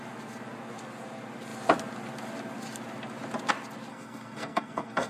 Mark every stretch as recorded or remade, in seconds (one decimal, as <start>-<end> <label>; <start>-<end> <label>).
0.0-3.9 recorded; 3.9-5.1 remade